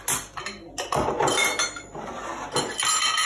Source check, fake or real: real